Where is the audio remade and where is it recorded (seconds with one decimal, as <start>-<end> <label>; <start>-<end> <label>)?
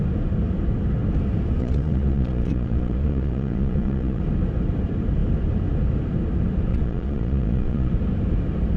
0.0-1.6 recorded; 1.6-4.2 remade; 4.2-6.7 recorded; 6.7-7.9 remade; 7.9-8.8 recorded